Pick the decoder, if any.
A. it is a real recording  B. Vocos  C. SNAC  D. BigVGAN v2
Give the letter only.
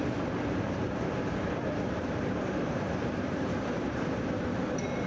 D